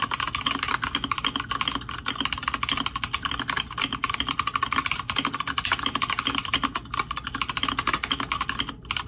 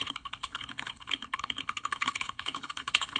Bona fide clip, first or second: first